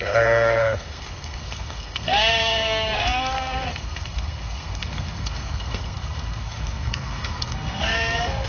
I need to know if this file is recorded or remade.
remade